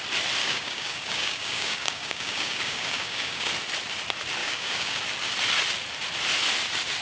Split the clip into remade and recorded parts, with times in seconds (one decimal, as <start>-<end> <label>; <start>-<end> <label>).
0.0-0.4 recorded; 0.4-3.5 remade; 3.5-4.4 recorded; 4.4-5.0 remade; 5.0-7.0 recorded